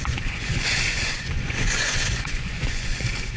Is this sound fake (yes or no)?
yes